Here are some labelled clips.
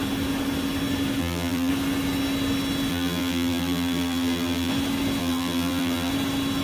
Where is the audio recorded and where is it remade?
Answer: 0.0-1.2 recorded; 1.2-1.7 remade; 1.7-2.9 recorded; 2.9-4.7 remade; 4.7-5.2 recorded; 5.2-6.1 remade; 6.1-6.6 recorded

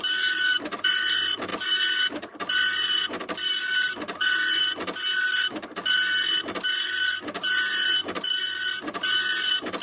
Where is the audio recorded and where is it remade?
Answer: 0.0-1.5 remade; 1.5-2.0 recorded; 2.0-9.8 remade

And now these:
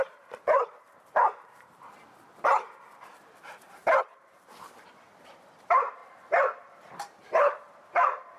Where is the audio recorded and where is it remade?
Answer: 0.0-6.0 remade; 6.0-6.9 recorded; 6.9-8.4 remade